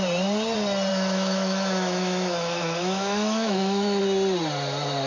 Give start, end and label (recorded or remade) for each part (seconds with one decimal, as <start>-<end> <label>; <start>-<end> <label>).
0.0-0.9 recorded; 0.9-4.0 remade; 4.0-5.1 recorded